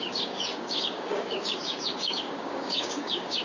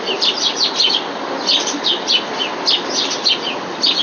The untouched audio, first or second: second